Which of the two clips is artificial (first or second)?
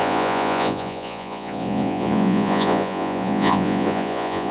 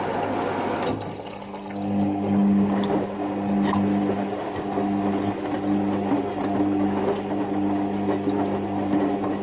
first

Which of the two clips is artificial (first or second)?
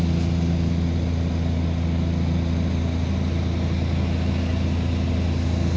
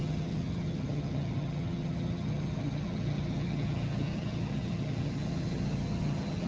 second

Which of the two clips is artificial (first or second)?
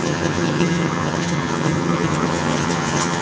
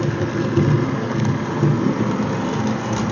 first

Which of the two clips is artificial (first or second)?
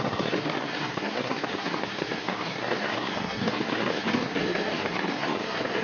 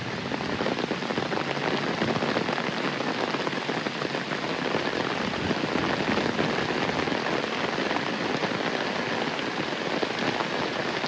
first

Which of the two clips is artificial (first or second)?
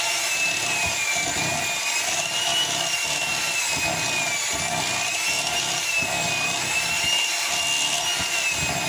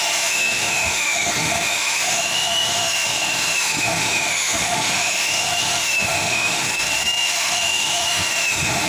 second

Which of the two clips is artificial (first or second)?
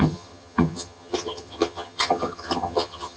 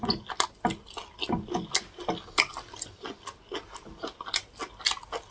first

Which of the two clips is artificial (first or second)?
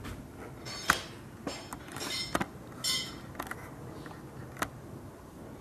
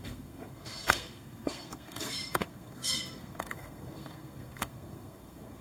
second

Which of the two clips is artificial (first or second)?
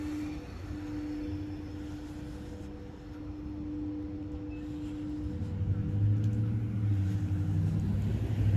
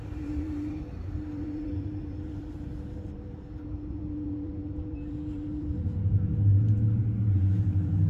second